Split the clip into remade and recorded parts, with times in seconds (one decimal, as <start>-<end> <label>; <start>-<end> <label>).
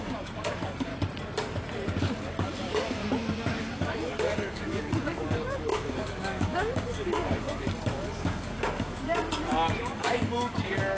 0.0-0.9 remade; 0.9-2.0 recorded; 2.0-3.0 remade; 3.0-3.6 recorded; 3.6-11.0 remade